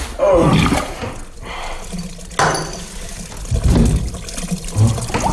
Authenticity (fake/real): real